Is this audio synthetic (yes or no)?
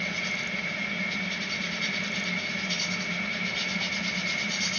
no